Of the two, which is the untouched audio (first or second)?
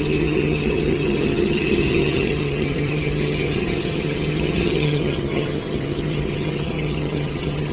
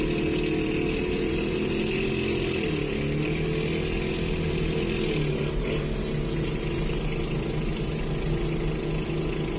second